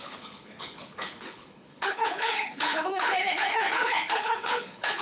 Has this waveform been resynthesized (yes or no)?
yes